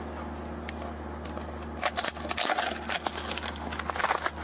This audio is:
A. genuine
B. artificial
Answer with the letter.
A